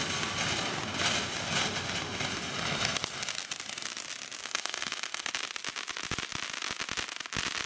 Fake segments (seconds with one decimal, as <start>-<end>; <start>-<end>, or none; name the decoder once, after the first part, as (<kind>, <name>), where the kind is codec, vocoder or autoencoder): 4.4-5.3 (autoencoder, DAC-VAE)